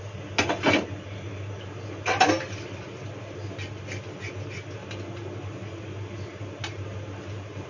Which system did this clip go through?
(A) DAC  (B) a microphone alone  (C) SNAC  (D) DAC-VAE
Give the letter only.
B